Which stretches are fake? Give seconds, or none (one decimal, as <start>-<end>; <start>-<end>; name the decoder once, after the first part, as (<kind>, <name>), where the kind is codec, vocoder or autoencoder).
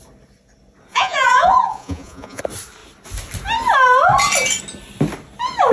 0.9-2.4 (vocoder, Vocos)